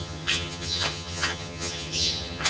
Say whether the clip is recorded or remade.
remade